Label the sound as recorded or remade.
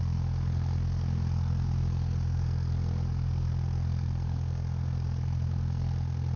remade